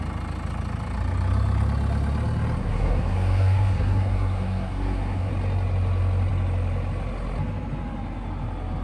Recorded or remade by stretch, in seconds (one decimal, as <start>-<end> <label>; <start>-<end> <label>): 0.0-2.6 recorded; 2.6-5.3 remade; 5.3-8.8 recorded